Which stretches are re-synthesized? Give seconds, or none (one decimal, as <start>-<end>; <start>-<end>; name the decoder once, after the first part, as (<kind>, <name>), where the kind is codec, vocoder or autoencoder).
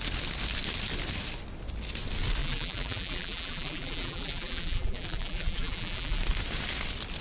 2.4-6.2 (vocoder, BigVGAN v2)